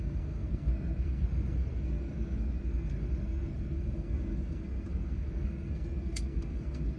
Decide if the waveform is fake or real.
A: fake